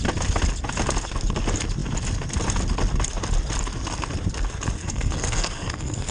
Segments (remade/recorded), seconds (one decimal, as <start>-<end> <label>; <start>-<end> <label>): 0.0-4.8 recorded; 4.8-6.1 remade